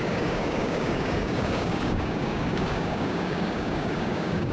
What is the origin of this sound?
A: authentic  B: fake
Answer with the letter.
B